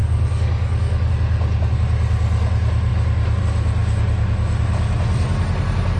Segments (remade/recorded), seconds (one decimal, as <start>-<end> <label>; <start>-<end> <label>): 0.0-1.1 remade; 1.1-6.0 recorded

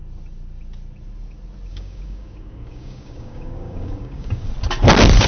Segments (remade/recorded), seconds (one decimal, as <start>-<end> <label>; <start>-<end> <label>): 0.0-1.7 recorded; 1.7-4.5 remade; 4.5-5.3 recorded

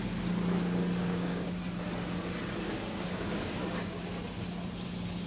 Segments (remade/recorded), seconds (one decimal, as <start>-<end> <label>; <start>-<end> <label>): 0.0-1.0 recorded; 1.0-1.5 remade; 1.5-2.7 recorded; 2.7-4.0 remade; 4.0-5.3 recorded

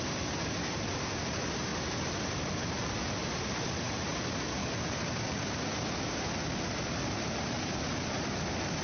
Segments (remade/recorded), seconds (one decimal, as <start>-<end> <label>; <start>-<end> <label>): 0.0-8.8 recorded

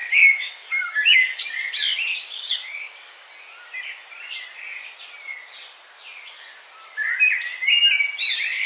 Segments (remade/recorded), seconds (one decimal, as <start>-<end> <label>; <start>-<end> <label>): 0.0-1.4 remade; 1.4-2.1 recorded; 2.1-3.3 remade; 3.3-8.7 recorded

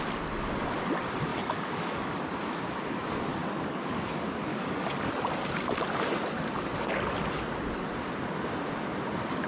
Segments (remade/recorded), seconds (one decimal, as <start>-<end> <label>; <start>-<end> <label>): 0.0-1.3 recorded; 1.3-2.2 remade; 2.2-3.4 recorded; 3.4-4.1 remade; 4.1-4.5 recorded; 4.5-5.1 remade; 5.1-9.5 recorded

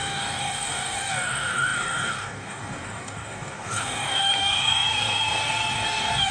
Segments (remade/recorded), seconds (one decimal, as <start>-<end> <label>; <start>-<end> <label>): 0.0-6.3 remade

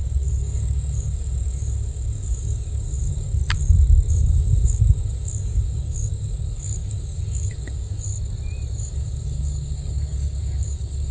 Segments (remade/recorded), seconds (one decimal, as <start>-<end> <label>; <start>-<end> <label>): 0.0-3.4 remade; 3.4-4.1 recorded; 4.1-8.1 remade; 8.1-8.8 recorded; 8.8-11.1 remade